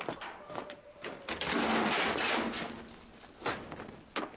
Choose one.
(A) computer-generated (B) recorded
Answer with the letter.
B